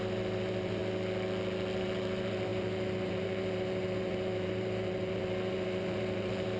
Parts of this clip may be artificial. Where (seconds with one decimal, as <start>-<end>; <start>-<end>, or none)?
0.0-0.8; 1.8-6.6